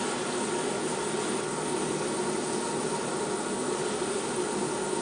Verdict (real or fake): real